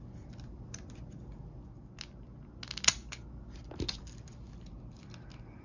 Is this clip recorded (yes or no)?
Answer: yes